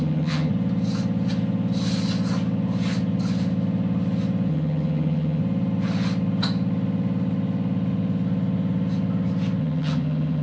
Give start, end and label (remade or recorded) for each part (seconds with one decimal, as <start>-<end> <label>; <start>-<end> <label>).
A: 0.0-0.5 remade; 0.5-4.5 recorded; 4.5-5.4 remade; 5.4-9.6 recorded; 9.6-10.4 remade